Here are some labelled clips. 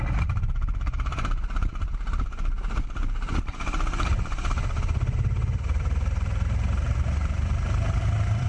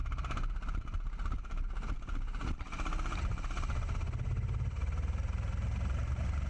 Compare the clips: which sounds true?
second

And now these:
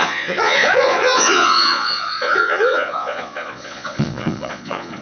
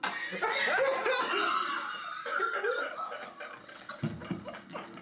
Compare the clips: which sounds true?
second